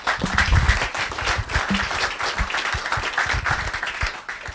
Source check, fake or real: real